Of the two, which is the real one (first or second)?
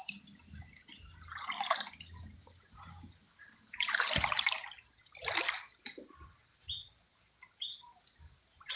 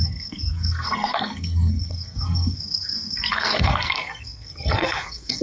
first